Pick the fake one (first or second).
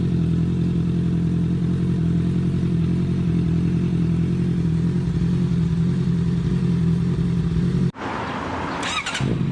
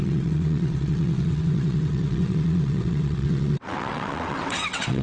second